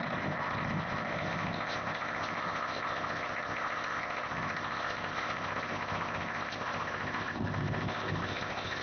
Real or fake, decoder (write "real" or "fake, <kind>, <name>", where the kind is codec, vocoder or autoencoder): fake, codec, ZipCodec